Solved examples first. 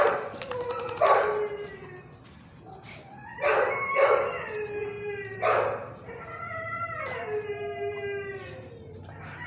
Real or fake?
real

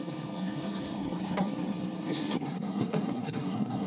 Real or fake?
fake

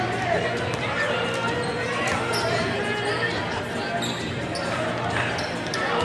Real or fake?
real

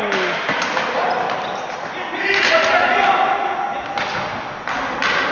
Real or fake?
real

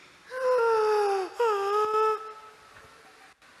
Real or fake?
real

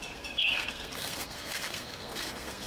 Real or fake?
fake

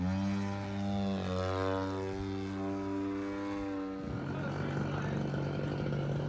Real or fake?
real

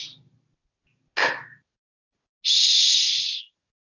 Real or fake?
real